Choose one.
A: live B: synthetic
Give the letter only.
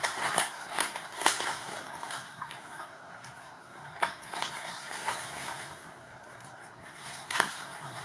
B